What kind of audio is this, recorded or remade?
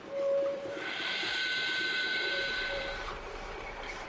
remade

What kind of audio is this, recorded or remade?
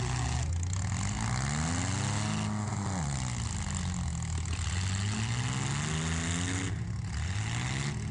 recorded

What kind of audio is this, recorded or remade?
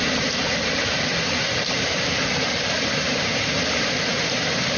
remade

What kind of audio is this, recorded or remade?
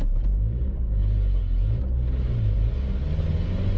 recorded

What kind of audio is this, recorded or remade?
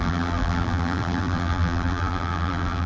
remade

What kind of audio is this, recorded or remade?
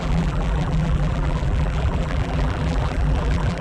remade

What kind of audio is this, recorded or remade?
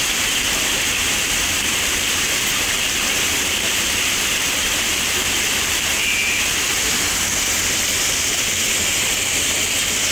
remade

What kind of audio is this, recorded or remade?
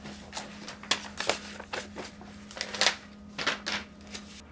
recorded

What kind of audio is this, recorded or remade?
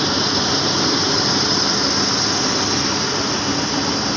recorded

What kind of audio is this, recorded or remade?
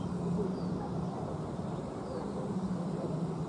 remade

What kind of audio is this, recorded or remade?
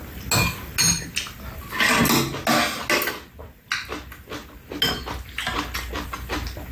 recorded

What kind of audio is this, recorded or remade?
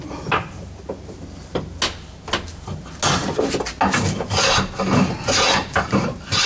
recorded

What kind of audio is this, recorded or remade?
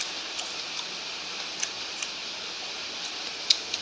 recorded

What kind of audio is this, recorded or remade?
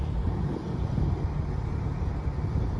remade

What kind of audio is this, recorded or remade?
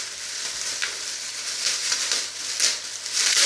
remade